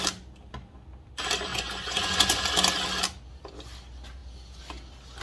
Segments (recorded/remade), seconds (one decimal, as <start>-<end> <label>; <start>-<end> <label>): 0.0-1.5 recorded; 1.5-2.4 remade; 2.4-5.2 recorded